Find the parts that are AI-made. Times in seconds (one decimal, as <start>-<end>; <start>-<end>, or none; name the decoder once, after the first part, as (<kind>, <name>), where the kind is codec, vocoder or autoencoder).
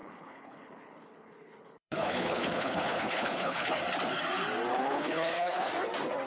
0.0-3.8 (codec, HILCodec); 4.7-5.7